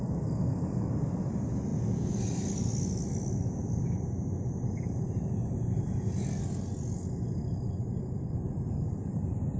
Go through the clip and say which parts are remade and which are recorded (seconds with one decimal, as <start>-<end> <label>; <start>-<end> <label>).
0.0-9.6 recorded